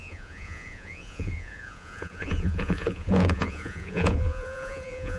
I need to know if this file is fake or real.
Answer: fake